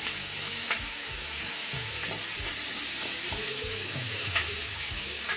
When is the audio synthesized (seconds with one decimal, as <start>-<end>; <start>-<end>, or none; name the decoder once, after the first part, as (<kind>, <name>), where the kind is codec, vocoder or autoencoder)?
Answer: 0.0-2.0 (autoencoder, DAC-VAE); 3.3-5.4